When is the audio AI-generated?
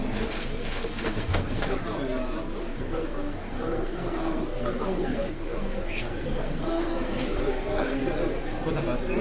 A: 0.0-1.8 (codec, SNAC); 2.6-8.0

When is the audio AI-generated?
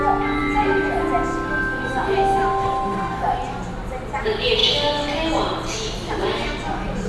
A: 2.5-3.2 (codec, SNAC)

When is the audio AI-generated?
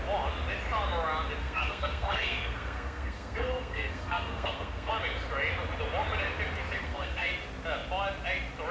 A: 1.4-4.9 (codec, SNAC); 6.8-7.3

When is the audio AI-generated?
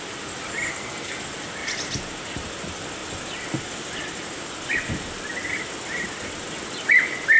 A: 0.7-1.2 (codec, SNAC)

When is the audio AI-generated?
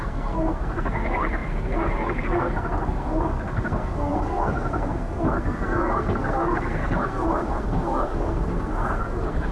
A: 0.0-9.5 (codec, SNAC)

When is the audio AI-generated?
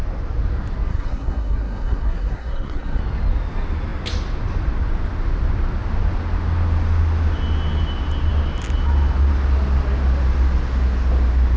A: 0.9-3.0 (codec, SNAC)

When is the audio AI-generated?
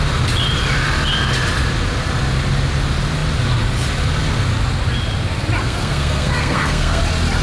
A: 5.6-7.0 (codec, SNAC)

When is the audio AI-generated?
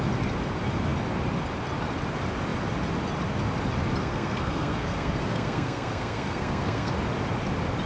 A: 4.0-6.9 (codec, SNAC)